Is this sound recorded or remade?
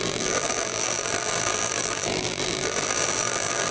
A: remade